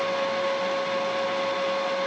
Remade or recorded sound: recorded